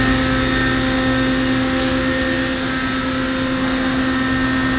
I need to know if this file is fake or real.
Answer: real